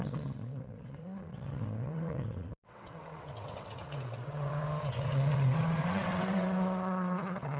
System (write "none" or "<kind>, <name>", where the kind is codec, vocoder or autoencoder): vocoder, WaveNeXt